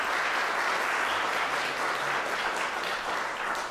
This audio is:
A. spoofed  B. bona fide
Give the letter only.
B